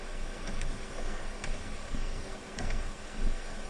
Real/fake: fake